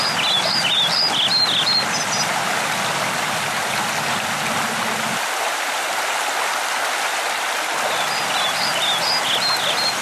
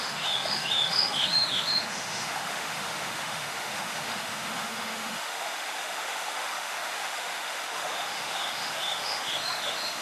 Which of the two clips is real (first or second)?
first